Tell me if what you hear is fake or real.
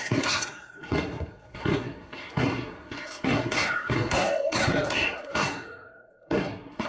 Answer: fake